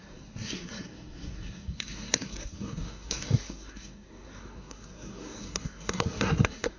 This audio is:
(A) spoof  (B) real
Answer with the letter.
A